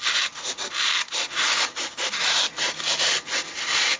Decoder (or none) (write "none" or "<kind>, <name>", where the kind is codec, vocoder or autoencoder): none